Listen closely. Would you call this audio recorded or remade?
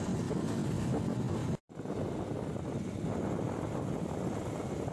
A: recorded